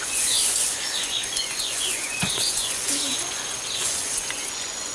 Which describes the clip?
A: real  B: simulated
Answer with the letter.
B